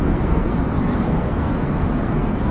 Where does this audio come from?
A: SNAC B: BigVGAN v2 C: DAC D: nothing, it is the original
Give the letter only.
A